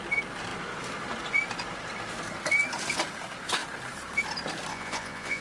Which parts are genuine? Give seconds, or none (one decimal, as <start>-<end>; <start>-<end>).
0.0-4.7